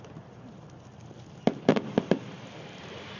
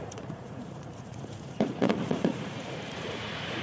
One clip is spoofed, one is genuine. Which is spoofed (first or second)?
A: second